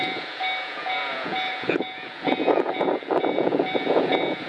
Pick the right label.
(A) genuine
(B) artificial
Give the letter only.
B